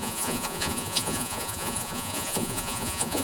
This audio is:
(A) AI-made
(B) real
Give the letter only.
A